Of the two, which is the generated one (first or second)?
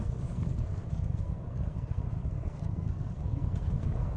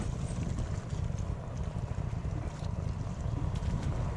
first